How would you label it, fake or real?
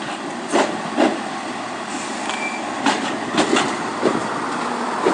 real